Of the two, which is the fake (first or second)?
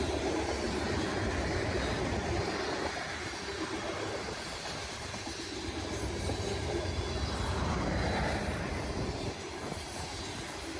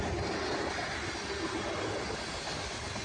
first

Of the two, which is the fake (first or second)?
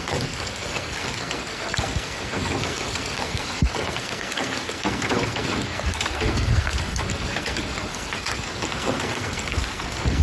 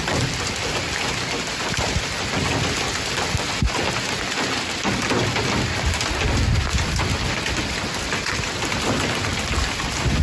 first